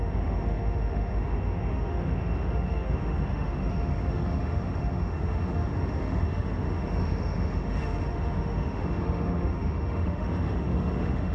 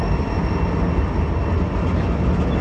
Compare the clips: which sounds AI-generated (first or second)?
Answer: first